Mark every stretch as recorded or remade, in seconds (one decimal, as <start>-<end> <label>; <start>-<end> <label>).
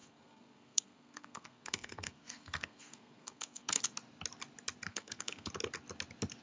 0.0-3.8 remade; 3.8-4.9 recorded; 4.9-5.5 remade; 5.5-6.4 recorded